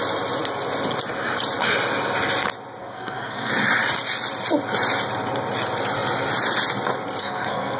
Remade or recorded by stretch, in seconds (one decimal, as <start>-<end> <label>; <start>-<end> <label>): 0.0-2.8 recorded; 2.8-3.5 remade; 3.5-7.2 recorded; 7.2-7.8 remade